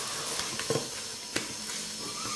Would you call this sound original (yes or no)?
yes